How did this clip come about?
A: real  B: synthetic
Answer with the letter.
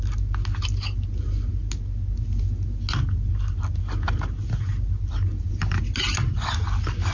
A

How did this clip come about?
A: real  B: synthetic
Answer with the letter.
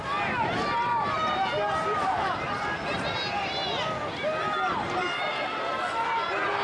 A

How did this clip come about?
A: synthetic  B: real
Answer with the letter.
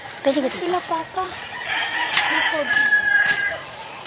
A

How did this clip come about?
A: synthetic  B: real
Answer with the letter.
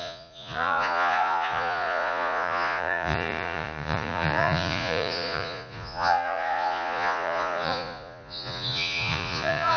A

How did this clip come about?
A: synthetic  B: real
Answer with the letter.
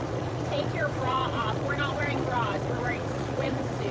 A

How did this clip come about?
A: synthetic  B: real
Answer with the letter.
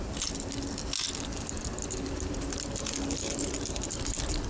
B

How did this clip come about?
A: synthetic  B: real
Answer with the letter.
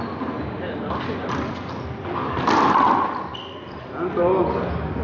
B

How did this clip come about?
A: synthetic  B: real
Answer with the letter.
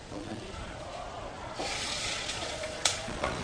A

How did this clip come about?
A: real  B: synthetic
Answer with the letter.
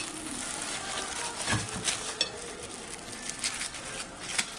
A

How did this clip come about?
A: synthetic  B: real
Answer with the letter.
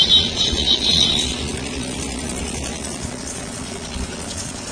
A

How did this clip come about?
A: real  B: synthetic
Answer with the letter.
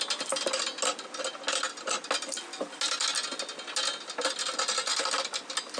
A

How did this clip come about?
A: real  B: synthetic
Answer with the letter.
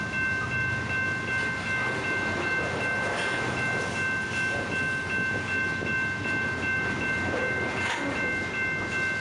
A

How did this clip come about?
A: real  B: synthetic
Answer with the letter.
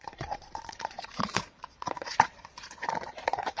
B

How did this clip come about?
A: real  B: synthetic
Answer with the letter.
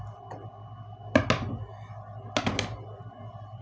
A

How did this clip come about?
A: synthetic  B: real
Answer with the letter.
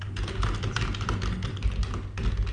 B